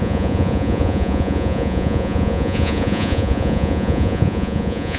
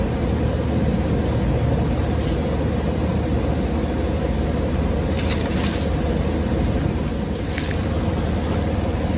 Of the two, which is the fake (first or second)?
first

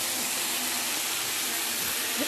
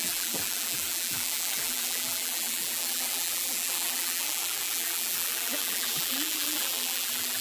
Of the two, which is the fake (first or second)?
second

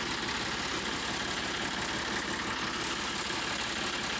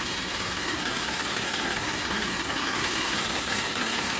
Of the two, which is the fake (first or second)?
second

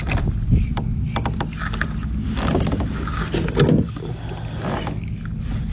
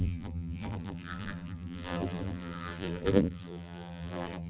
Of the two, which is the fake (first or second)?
second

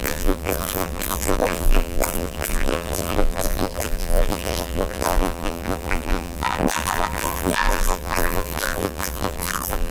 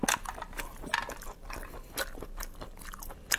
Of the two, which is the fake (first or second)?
first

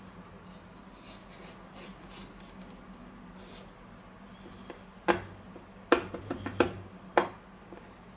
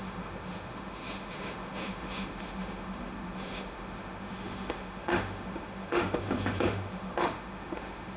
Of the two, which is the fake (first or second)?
second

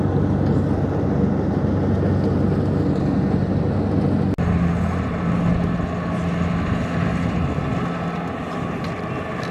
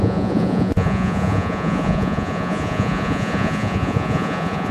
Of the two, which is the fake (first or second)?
second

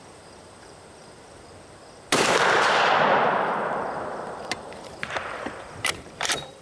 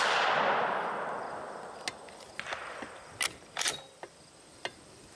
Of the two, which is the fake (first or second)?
first